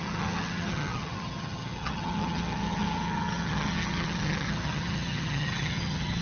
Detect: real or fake fake